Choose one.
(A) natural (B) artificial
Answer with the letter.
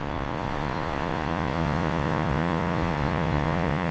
B